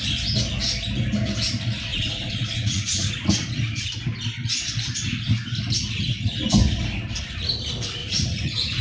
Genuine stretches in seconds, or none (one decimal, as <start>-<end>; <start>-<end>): 0.0-1.9; 3.1-8.0